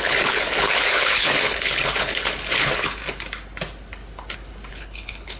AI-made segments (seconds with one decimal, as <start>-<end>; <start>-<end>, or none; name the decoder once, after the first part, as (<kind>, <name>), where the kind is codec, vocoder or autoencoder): 0.0-3.0 (codec, HILCodec); 4.7-5.4

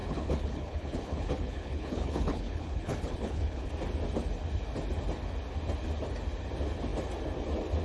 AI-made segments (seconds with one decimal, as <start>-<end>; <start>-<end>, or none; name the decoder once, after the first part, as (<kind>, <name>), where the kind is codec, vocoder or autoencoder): 0.0-3.7 (codec, HILCodec)

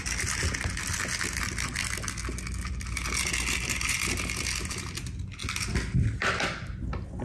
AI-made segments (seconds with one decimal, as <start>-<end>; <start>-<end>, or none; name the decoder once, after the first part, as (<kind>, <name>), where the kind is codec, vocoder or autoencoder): none

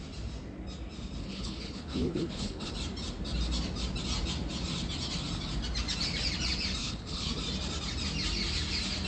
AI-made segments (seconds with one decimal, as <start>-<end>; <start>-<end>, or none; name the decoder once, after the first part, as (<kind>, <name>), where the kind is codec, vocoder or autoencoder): 1.2-2.7 (codec, HILCodec); 6.8-7.3

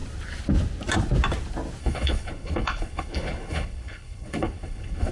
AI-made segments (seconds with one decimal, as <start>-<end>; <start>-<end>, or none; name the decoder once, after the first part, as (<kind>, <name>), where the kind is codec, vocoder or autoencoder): 1.8-5.1 (codec, HILCodec)